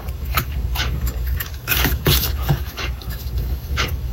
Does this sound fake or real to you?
fake